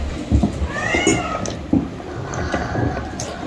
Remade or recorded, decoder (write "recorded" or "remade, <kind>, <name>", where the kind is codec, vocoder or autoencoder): recorded